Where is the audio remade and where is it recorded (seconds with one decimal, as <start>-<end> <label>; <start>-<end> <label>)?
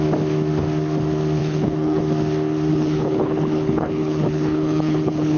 0.0-1.4 recorded; 1.4-2.0 remade; 2.0-2.7 recorded; 2.7-5.4 remade